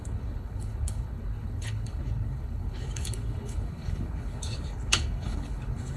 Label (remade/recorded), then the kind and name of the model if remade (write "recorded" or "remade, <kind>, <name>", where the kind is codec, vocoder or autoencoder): remade, codec, HILCodec